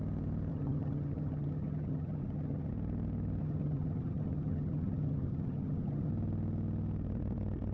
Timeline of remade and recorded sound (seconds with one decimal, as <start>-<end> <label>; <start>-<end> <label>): 0.0-0.5 recorded; 0.5-2.7 remade; 2.7-3.4 recorded; 3.4-6.1 remade; 6.1-7.7 recorded